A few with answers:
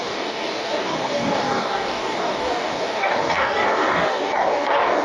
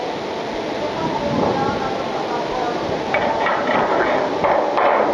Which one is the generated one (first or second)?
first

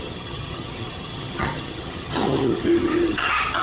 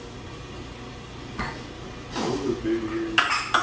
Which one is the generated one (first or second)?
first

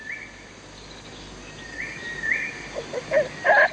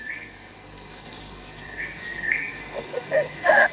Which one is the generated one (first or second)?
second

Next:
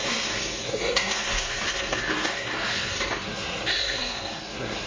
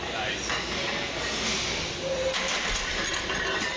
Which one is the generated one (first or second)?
first